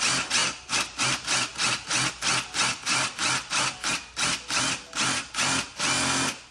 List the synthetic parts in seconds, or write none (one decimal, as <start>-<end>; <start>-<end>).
0.4-1.0

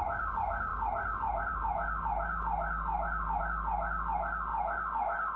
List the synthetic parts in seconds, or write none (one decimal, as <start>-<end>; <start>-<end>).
none

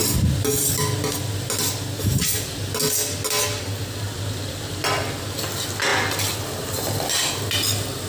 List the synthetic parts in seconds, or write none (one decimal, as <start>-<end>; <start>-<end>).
none